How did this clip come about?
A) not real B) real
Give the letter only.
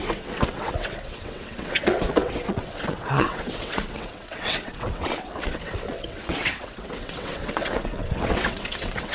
A